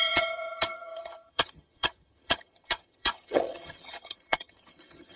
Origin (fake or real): fake